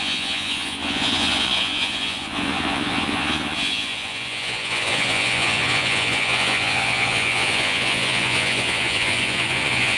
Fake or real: fake